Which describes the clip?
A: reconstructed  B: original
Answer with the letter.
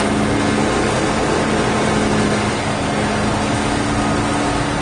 B